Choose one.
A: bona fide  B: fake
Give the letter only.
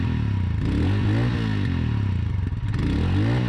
A